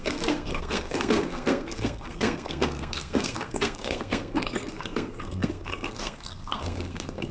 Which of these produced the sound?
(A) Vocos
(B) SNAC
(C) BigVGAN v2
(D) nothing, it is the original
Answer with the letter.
B